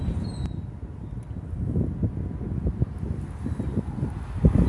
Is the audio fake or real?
real